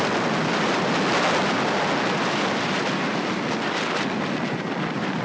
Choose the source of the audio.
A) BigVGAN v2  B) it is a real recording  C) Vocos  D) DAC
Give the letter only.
B